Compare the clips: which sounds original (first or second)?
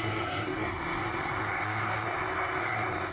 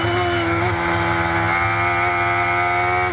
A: second